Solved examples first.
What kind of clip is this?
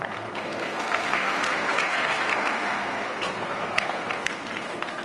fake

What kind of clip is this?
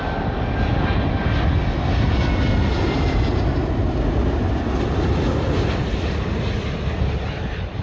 real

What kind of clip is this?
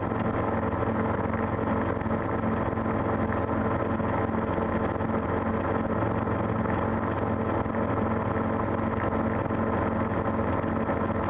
real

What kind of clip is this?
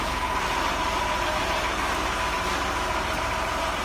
real